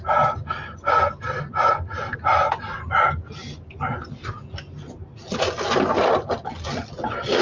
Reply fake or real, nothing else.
real